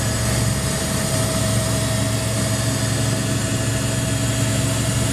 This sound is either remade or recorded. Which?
recorded